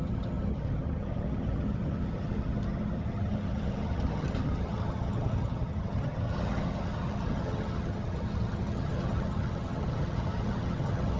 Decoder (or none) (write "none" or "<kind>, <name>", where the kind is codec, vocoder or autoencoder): vocoder, HiFi-GAN